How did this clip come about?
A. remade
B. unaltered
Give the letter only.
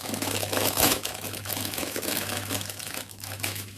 A